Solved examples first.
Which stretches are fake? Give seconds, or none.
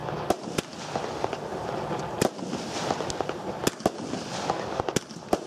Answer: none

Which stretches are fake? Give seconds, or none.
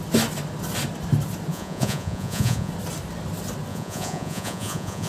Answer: 1.5-2.7 (vocoder, Vocos); 3.7-5.1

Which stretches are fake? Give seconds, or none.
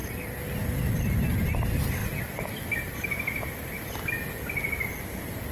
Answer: none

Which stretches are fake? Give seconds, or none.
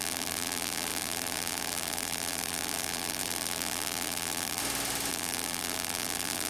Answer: 0.0-4.6 (vocoder, BigVGAN v2); 5.1-6.5